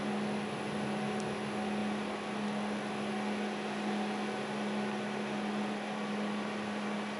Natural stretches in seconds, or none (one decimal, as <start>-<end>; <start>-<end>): 0.0-7.2